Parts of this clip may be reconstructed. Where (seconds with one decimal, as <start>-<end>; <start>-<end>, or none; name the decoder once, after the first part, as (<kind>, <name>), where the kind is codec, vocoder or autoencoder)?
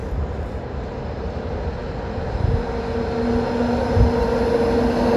none